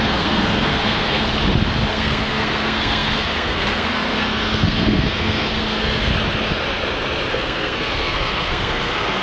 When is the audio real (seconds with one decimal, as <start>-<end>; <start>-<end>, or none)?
1.3-1.9; 6.1-7.3